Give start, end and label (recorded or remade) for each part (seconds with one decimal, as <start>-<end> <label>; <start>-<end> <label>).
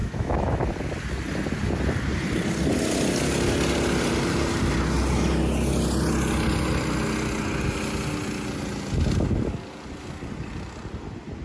0.0-0.6 remade; 0.6-11.4 recorded